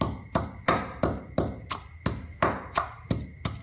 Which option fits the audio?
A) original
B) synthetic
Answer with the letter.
A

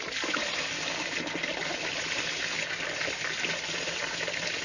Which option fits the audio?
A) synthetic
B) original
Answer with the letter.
B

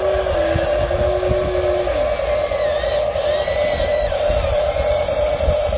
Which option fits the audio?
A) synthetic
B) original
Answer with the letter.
B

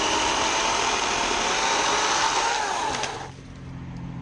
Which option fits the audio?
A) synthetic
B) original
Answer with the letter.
B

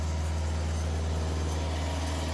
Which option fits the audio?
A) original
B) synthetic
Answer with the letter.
A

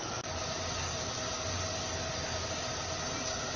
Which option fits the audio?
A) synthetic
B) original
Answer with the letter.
B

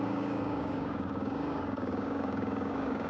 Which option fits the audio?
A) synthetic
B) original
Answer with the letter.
A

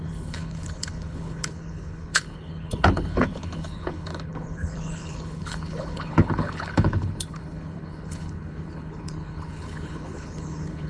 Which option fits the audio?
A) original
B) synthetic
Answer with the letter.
B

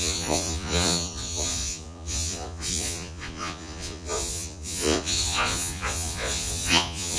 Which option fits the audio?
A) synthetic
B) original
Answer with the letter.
A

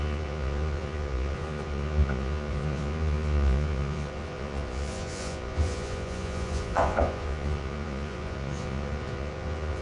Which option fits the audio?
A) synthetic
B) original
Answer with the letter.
A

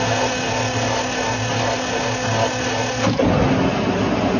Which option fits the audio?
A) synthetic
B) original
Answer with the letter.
B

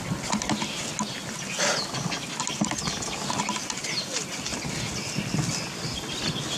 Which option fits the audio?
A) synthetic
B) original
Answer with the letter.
B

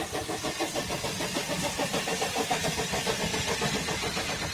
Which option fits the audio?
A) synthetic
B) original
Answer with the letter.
B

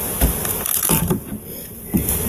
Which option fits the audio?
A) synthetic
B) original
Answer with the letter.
B